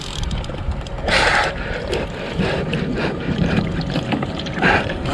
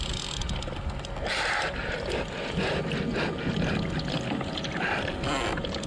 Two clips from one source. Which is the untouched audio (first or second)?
second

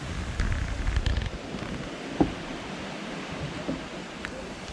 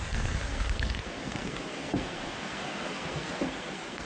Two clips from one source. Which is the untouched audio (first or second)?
first